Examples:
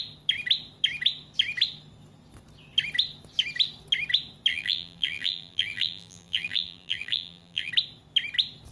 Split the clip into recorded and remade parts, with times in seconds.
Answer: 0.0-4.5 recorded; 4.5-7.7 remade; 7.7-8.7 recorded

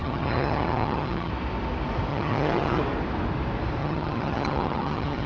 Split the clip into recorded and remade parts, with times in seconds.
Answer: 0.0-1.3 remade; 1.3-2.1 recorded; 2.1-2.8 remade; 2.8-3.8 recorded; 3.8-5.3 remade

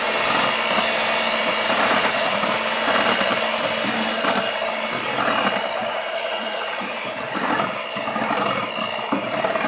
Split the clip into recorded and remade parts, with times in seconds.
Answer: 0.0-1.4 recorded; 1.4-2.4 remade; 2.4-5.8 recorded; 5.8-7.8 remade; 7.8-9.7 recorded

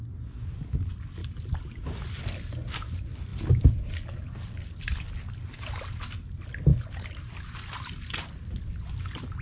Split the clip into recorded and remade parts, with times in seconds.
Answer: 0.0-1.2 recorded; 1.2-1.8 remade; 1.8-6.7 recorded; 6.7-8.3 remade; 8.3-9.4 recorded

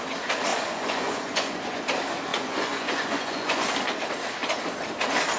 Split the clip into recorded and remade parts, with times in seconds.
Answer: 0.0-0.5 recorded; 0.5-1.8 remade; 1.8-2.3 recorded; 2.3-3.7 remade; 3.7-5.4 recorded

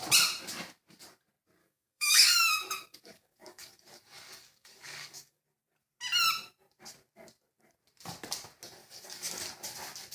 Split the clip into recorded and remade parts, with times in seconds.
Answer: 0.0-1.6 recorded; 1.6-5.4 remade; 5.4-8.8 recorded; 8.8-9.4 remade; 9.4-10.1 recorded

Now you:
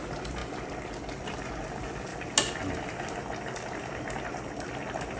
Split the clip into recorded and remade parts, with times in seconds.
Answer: 0.0-5.2 recorded